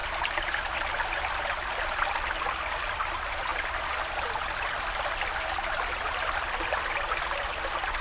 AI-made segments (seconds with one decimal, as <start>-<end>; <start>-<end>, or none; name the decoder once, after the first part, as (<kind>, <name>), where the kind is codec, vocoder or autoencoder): none